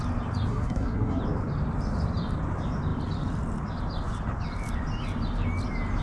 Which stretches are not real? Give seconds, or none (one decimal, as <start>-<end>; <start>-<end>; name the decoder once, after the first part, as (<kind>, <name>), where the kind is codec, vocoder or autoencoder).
0.5-1.2 (codec, SNAC)